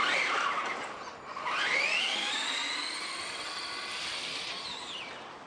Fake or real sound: real